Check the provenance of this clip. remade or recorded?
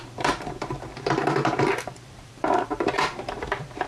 remade